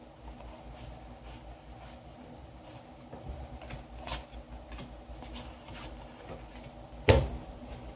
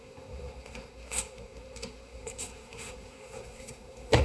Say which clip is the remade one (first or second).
second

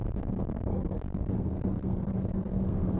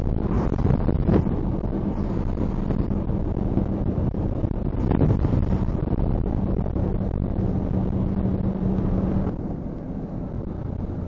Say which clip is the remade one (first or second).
first